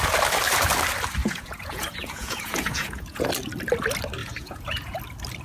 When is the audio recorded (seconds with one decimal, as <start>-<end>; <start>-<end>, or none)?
0.0-1.2; 3.3-4.2; 5.0-5.4